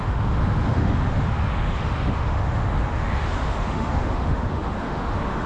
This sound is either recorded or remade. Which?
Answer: remade